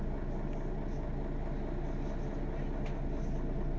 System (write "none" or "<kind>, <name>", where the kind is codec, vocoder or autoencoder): none